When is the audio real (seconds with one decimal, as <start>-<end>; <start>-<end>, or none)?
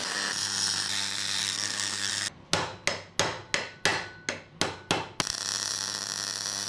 0.0-1.4; 2.1-6.7